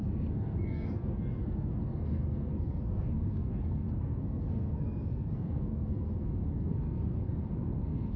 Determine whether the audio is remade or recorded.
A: remade